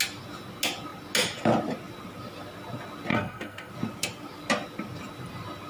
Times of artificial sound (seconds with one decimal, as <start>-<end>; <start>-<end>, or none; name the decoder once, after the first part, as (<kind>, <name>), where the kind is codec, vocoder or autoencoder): 3.1-3.7 (codec, SNAC)